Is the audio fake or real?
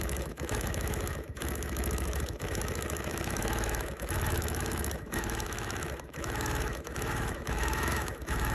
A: fake